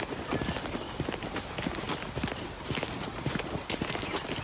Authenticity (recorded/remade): recorded